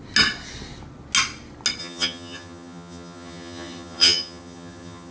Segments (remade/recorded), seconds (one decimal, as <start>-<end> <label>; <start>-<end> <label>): 0.0-1.8 recorded; 1.8-5.1 remade